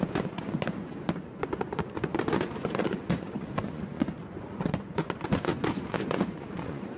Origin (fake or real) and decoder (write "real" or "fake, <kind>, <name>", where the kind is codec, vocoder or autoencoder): fake, vocoder, Vocos